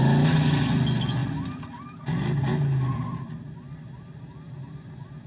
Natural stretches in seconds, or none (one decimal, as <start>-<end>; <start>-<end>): 0.0-5.3